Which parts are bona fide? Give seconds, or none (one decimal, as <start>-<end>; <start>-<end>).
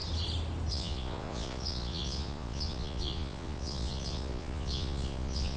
0.0-0.7